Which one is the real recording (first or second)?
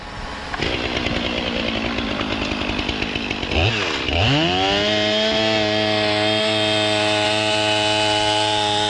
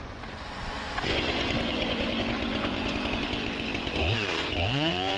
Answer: first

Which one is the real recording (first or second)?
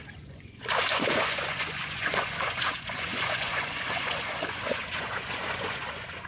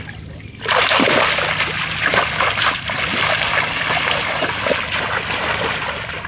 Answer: second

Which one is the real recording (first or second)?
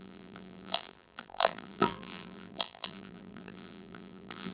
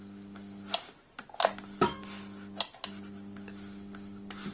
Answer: second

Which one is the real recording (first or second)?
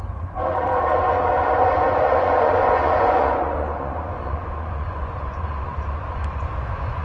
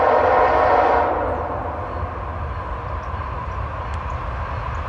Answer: second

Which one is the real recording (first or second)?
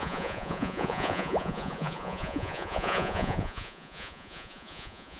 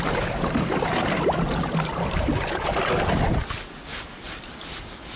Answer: second